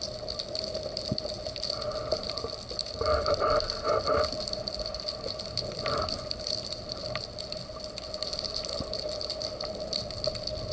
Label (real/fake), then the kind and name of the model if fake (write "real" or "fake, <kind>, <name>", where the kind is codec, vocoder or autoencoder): real